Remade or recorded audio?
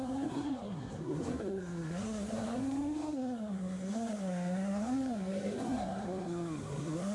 remade